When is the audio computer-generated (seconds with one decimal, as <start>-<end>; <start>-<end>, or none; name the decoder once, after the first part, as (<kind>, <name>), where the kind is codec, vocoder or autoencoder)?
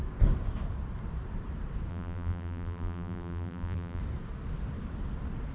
1.9-4.0 (vocoder, BigVGAN v2)